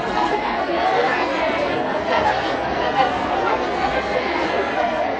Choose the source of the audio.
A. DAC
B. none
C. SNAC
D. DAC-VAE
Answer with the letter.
C